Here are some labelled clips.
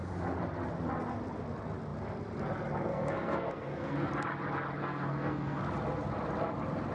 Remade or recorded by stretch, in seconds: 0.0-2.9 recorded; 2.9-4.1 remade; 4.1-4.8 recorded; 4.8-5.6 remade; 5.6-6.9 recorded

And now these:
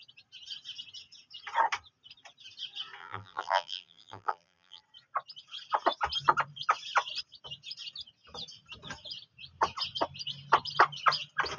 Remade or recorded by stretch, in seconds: 0.0-3.0 recorded; 3.0-4.8 remade; 4.8-11.6 recorded

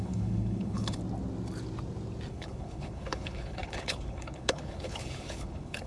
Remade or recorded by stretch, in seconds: 0.0-1.0 remade; 1.0-2.3 recorded; 2.3-5.9 remade

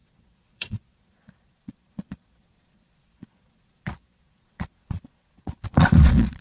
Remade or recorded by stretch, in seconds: 0.0-6.4 remade

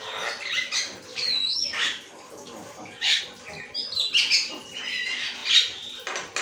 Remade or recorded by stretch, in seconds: 0.0-1.1 recorded; 1.1-3.2 remade; 3.2-6.4 recorded

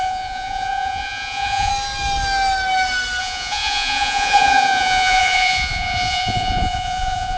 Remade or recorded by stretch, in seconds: 0.0-1.7 remade; 1.7-3.2 recorded; 3.2-7.4 remade

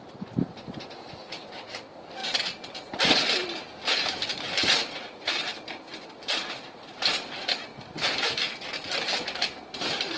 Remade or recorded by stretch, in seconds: 0.0-10.2 recorded